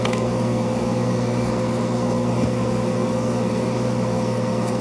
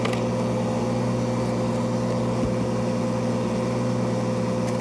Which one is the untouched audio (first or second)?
second